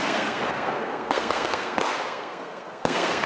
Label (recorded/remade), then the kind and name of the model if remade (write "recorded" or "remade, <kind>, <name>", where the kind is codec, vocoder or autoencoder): remade, codec, SNAC